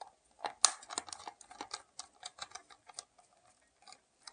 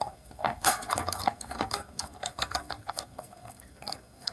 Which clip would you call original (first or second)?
first